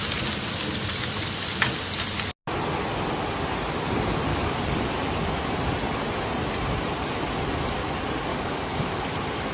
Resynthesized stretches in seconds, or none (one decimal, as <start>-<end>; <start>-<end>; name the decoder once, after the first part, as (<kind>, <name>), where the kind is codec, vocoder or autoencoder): 4.3-4.9 (codec, DAC); 8.3-9.0